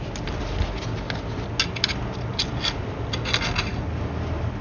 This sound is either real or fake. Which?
real